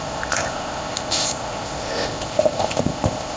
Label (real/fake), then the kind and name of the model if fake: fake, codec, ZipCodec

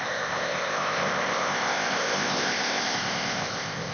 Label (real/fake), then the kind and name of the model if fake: fake, codec, ZipCodec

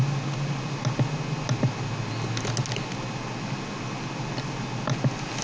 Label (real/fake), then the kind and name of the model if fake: real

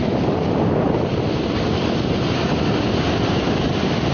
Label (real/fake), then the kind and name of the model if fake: real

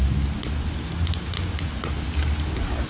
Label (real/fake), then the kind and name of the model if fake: real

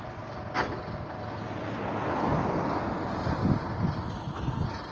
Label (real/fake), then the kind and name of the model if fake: real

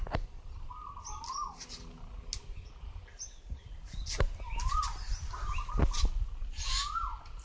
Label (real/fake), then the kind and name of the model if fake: real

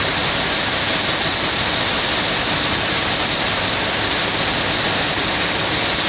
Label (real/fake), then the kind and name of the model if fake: real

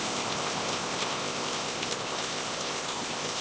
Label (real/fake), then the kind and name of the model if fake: fake, codec, ZipCodec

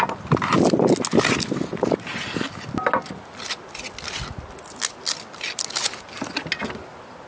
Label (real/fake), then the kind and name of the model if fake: real